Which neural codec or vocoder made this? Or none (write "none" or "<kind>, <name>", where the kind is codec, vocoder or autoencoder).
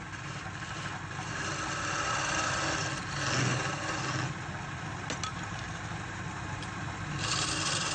none